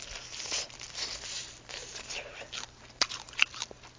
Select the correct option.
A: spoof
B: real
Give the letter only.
B